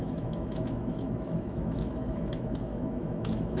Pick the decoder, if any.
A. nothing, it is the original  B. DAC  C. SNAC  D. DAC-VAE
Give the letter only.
D